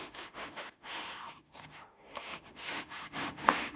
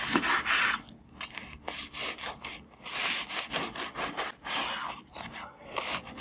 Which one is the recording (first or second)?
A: second